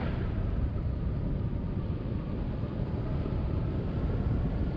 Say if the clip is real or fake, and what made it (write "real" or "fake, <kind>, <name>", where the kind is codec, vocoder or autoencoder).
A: real